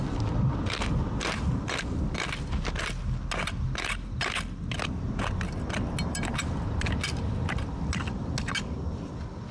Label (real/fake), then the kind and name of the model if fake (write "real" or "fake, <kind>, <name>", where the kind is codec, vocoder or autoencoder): real